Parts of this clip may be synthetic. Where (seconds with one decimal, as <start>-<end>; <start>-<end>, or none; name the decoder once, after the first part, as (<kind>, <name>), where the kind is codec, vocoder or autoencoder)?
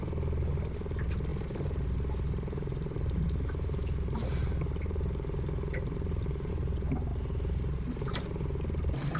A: 1.3-6.5 (vocoder, BigVGAN v2); 7.1-8.2